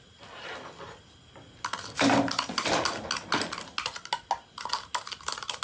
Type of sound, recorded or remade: recorded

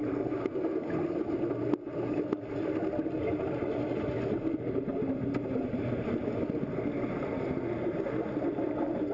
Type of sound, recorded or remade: recorded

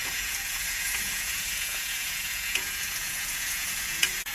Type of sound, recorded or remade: remade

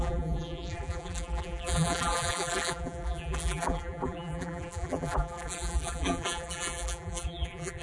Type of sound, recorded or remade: remade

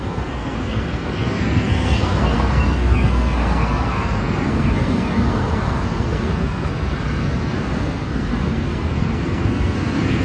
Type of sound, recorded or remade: remade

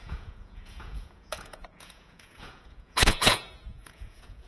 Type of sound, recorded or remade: remade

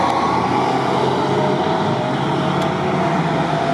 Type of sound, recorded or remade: recorded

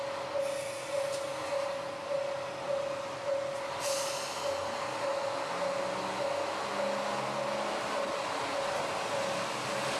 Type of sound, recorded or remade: recorded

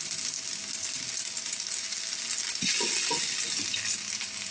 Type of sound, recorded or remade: recorded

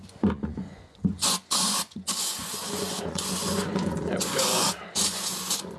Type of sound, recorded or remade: remade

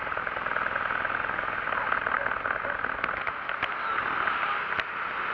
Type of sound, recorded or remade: recorded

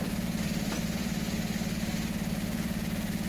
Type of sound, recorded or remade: remade